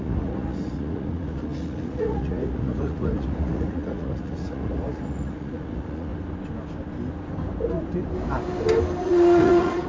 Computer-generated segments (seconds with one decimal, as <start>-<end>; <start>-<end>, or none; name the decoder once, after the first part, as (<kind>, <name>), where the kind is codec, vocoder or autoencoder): 0.0-6.1 (vocoder, Vocos); 9.0-9.9